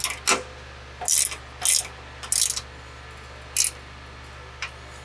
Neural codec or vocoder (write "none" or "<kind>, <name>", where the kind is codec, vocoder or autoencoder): none